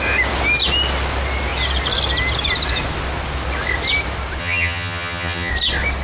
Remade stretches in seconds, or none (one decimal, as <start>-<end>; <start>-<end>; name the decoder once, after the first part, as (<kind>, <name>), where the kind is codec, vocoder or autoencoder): 4.4-5.5 (vocoder, HiFi-GAN)